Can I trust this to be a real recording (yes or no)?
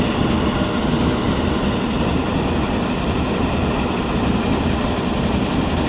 yes